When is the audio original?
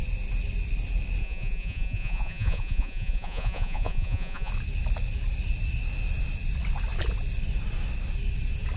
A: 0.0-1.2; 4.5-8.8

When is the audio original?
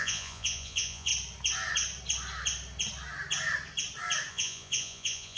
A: 1.1-4.3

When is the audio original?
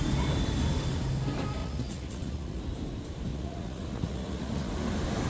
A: 0.0-1.6; 2.6-3.3; 4.7-5.3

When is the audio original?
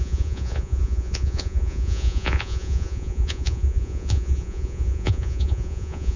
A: none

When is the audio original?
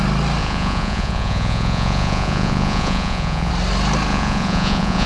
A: 0.0-0.4; 3.5-4.1